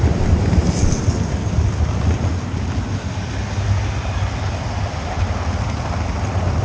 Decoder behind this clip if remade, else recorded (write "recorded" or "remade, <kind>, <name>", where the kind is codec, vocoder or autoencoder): recorded